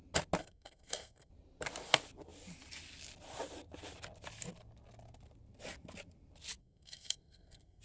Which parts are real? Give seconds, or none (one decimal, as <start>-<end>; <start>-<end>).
0.0-0.4; 1.3-6.6